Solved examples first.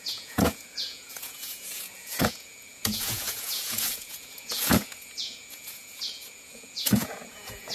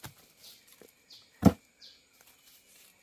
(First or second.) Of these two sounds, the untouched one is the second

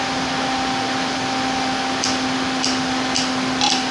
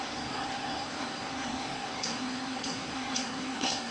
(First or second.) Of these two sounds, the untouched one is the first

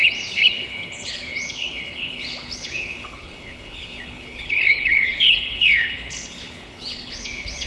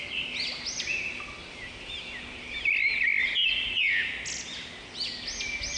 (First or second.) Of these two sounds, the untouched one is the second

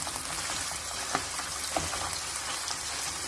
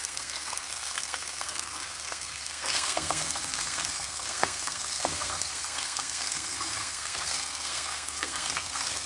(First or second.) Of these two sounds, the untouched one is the first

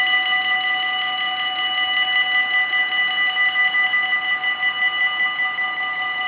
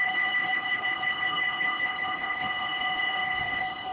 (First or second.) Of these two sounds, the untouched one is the first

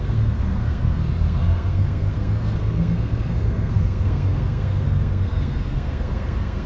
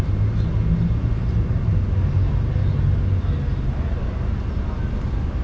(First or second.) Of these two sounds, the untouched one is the second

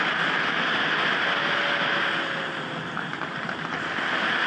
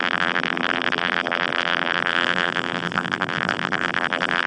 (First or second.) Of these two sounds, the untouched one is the first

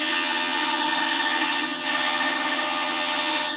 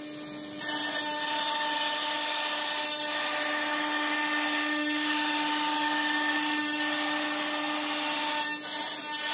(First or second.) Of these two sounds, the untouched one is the second